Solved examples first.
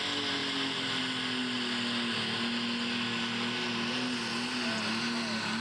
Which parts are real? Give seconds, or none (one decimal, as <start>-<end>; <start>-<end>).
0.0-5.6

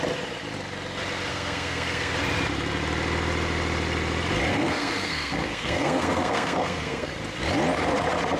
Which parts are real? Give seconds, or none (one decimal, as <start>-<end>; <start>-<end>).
0.0-1.3; 2.1-4.5; 7.1-8.4

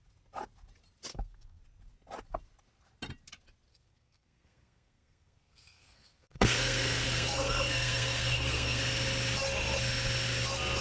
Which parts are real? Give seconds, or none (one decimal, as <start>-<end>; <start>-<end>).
0.0-1.1; 1.6-3.7; 8.8-10.8

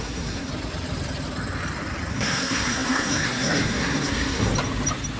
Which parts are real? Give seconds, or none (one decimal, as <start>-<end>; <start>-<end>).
0.5-2.1; 4.5-5.2

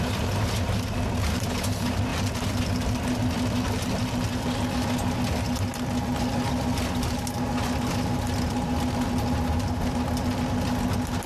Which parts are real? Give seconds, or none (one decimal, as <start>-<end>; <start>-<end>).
0.0-11.3

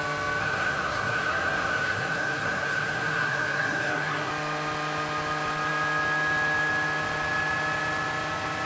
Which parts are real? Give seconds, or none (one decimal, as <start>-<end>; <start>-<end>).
0.0-0.4; 4.3-8.7

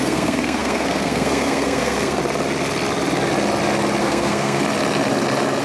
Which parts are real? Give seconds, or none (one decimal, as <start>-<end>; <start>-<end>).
2.2-4.0; 4.6-5.6

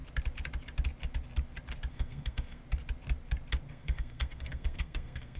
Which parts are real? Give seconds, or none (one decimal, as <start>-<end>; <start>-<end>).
0.0-1.9; 2.6-3.7